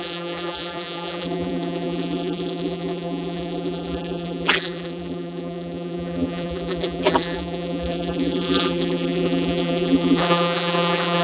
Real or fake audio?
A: fake